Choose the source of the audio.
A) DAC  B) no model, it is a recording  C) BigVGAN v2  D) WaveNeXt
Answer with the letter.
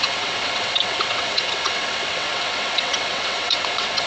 D